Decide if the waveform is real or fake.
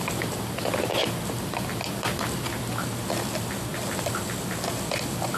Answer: real